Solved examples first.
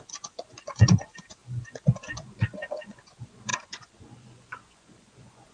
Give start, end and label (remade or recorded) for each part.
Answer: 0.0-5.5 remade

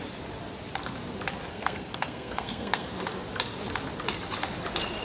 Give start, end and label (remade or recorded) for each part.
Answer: 0.0-1.5 recorded; 1.5-2.9 remade; 2.9-5.0 recorded

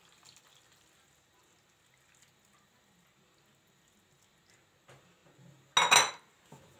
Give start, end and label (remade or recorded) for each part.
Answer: 0.0-6.8 recorded

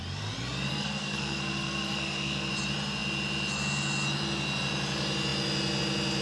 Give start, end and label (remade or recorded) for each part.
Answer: 0.0-0.7 recorded; 0.7-2.5 remade; 2.5-6.2 recorded

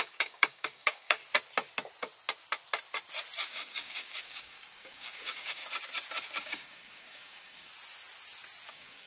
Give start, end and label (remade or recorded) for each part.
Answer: 0.0-1.2 remade; 1.2-3.5 recorded; 3.5-5.6 remade; 5.6-6.4 recorded; 6.4-7.7 remade; 7.7-8.7 recorded; 8.7-9.1 remade